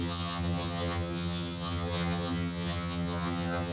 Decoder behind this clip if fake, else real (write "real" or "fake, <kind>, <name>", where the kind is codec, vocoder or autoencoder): fake, vocoder, HiFi-GAN